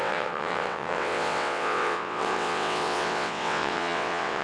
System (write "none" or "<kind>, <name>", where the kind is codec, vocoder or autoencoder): vocoder, WaveNeXt